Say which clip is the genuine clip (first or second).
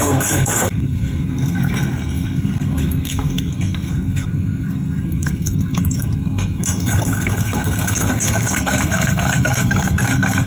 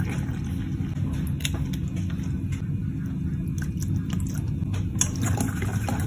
second